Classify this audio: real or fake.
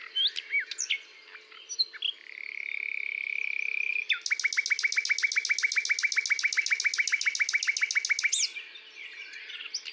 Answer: real